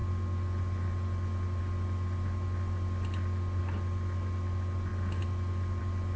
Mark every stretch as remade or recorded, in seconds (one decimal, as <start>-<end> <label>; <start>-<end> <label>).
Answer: 0.0-6.2 recorded